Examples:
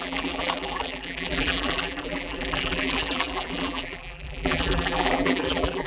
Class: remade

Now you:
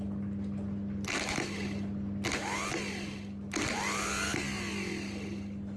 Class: recorded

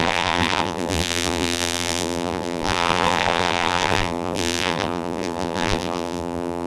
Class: remade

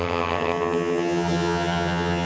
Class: remade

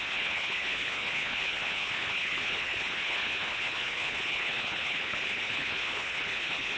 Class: remade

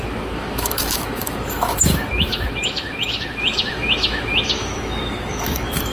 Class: remade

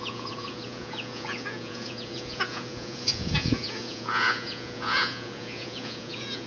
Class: remade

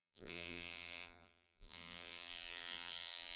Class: remade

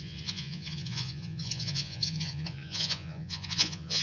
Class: remade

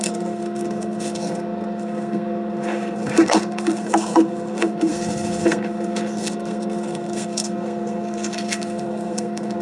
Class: remade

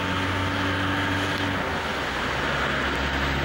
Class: recorded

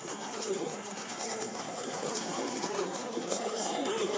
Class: remade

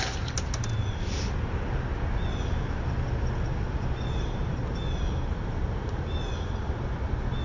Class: recorded